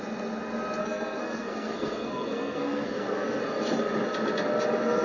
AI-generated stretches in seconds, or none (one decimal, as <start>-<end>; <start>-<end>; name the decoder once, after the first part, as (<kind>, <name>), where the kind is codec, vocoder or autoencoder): 0.8-3.4 (codec, SNAC)